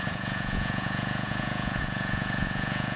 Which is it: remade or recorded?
remade